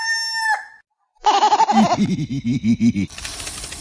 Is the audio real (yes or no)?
yes